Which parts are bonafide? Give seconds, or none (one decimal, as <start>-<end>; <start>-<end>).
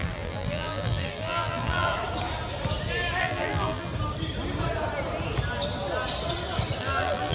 1.9-3.2; 3.9-6.8